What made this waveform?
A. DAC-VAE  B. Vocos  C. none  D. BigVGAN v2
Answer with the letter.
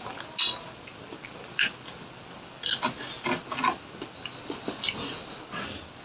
C